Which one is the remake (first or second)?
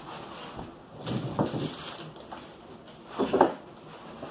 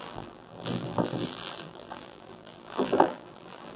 second